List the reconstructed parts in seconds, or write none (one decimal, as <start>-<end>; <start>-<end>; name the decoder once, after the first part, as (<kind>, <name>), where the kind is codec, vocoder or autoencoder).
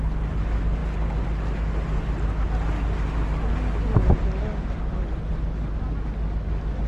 none